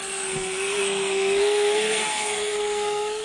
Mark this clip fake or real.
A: fake